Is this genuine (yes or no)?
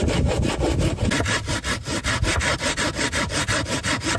yes